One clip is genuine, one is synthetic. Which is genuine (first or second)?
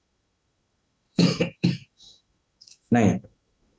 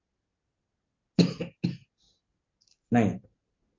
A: second